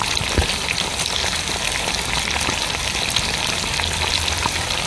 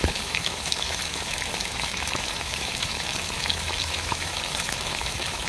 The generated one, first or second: second